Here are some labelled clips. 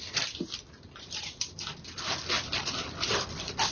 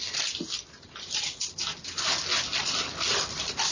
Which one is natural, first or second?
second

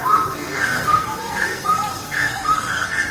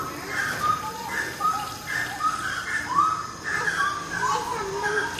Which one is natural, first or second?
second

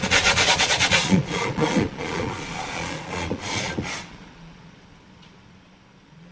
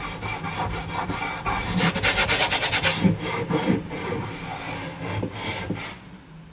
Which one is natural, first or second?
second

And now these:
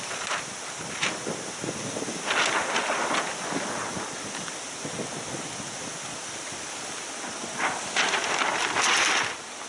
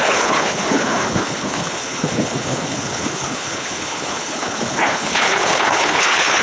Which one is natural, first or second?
first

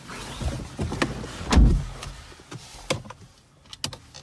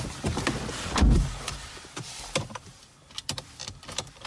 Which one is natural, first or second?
first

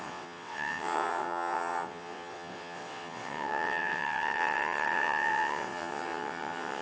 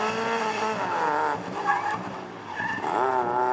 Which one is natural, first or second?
second